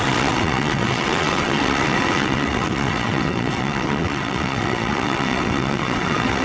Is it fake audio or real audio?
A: fake